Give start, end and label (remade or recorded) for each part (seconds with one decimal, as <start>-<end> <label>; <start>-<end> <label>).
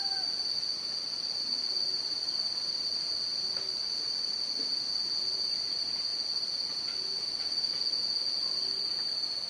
0.0-9.5 recorded